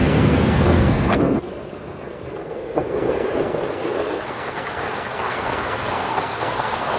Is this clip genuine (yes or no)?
no